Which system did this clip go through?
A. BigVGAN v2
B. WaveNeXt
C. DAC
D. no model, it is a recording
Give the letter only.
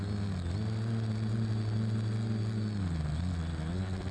D